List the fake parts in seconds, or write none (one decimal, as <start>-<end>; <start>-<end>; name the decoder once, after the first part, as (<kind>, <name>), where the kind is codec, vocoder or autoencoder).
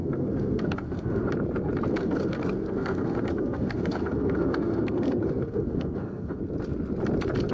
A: 0.0-1.3 (codec, SNAC); 1.9-6.4